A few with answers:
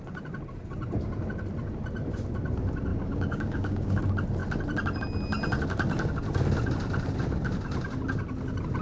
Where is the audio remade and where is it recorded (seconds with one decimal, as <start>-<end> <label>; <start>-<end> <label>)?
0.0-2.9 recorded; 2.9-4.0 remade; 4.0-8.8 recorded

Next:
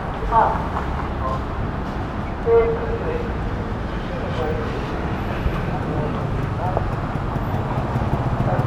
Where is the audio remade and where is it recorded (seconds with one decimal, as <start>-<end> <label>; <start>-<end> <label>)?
0.0-8.7 recorded

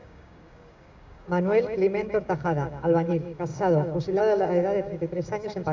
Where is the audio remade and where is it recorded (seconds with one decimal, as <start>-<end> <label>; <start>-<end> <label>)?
0.0-5.7 remade

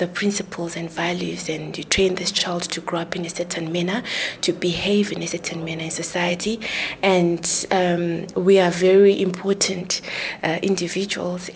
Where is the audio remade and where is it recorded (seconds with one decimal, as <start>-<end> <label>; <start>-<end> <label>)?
0.0-6.3 recorded; 6.3-9.8 remade; 9.8-11.6 recorded

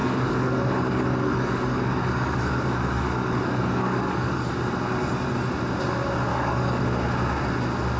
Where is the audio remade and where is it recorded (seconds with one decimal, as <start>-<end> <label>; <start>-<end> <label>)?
0.0-4.5 remade; 4.5-6.3 recorded; 6.3-6.8 remade; 6.8-8.0 recorded